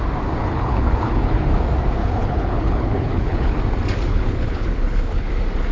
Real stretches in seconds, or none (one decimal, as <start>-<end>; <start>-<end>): 0.0-0.4; 1.5-2.0; 3.6-4.1; 5.3-5.7